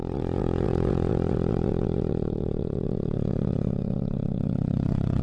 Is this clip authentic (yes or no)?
no